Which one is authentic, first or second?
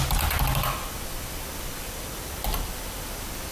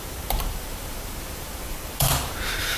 first